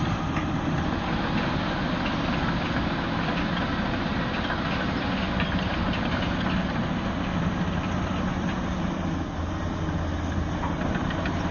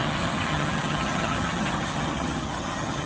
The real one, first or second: first